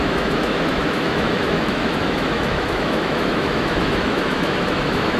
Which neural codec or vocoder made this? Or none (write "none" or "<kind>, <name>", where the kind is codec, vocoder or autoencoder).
autoencoder, DAC-VAE